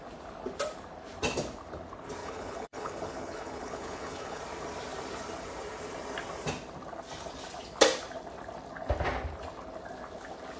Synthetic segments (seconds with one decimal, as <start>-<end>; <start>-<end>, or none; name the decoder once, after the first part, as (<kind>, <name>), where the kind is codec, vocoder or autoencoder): 2.2-4.4 (codec, HILCodec)